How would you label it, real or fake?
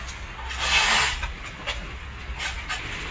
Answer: real